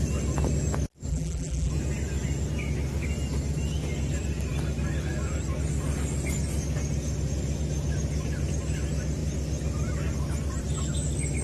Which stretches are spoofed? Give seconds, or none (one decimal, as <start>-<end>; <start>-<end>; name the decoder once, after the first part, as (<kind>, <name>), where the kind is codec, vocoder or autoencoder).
1.1-1.7 (vocoder, BigVGAN v2)